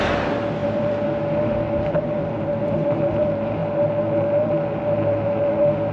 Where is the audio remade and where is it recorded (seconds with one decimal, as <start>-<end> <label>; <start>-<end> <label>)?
0.0-5.9 recorded